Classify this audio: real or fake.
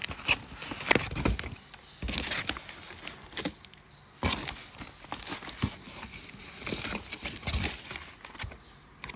real